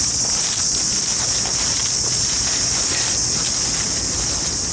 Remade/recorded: recorded